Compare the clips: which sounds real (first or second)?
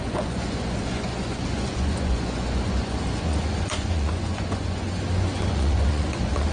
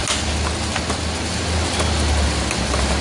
second